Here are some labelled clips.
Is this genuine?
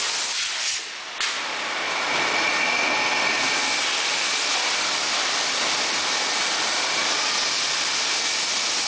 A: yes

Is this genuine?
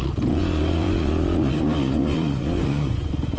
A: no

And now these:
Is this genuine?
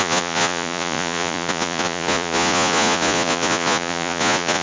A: no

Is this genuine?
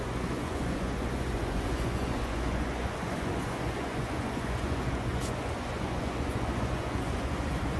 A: no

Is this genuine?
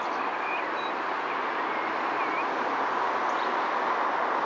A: yes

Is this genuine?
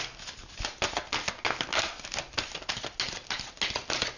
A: yes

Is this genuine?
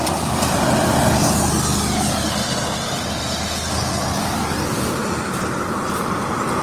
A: yes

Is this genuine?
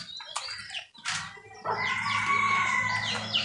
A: yes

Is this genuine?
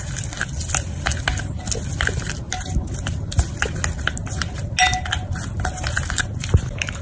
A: yes